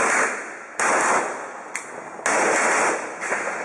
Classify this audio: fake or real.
real